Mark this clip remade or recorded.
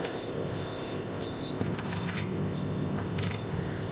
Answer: remade